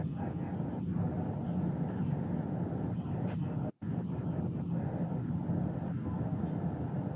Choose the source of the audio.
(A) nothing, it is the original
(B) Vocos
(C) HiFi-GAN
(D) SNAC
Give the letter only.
A